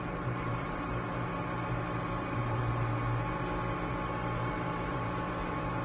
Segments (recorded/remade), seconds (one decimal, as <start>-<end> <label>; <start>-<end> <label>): 0.0-1.3 remade; 1.3-2.2 recorded; 2.2-2.9 remade; 2.9-3.9 recorded; 3.9-5.8 remade

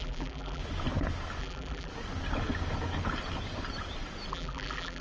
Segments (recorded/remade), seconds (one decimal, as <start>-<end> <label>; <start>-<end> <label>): 0.0-0.6 remade; 0.6-1.4 recorded; 1.4-1.9 remade; 1.9-4.3 recorded; 4.3-5.0 remade

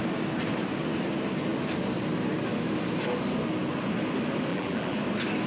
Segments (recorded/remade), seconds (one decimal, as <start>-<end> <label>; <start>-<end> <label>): 0.0-4.5 recorded; 4.5-5.0 remade; 5.0-5.5 recorded

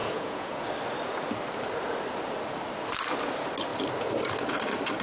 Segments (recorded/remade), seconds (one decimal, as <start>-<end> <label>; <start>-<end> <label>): 0.0-0.6 remade; 0.6-5.0 recorded

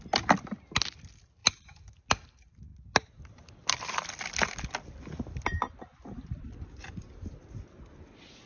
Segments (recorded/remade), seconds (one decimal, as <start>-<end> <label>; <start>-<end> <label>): 0.0-1.4 recorded; 1.4-2.0 remade; 2.0-2.7 recorded; 2.7-7.8 remade; 7.8-8.5 recorded

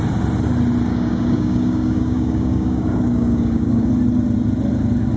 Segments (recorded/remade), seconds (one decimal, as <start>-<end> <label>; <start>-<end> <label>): 0.0-0.9 recorded; 0.9-3.9 remade; 3.9-5.2 recorded

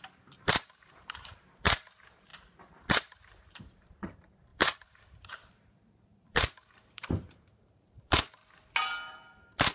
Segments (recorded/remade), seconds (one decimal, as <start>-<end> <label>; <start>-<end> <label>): 0.0-8.4 remade; 8.4-9.1 recorded; 9.1-9.7 remade